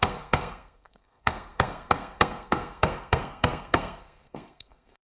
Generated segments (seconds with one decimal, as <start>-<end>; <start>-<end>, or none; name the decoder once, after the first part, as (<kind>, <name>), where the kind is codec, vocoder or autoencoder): 0.0-5.0 (codec, SNAC)

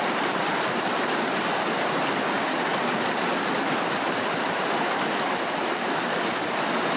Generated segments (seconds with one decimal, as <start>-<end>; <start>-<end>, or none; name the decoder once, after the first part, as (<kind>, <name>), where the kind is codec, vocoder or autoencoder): none